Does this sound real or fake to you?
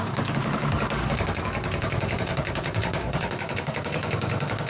fake